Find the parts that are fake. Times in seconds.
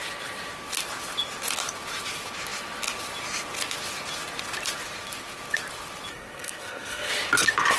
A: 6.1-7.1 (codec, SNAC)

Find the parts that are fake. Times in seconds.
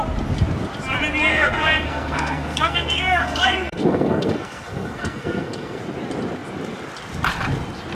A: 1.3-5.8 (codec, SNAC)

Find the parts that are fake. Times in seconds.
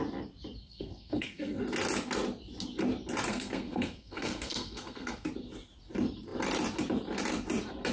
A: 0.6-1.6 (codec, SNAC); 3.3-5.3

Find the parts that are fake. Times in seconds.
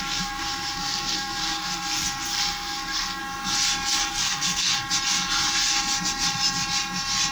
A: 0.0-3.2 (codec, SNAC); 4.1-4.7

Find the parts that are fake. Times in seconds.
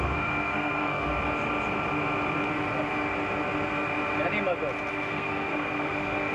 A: 0.0-1.1 (codec, SNAC); 4.9-6.3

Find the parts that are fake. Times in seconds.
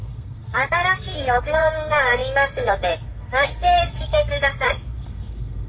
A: 0.0-5.7 (codec, SNAC)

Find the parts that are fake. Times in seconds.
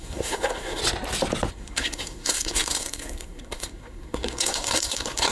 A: 0.0-0.8 (codec, SNAC); 1.5-5.3